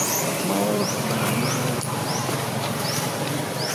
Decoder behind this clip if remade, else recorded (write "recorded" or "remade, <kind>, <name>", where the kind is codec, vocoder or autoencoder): remade, vocoder, BigVGAN v2